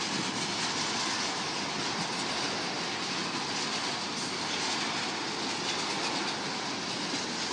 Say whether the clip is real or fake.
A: real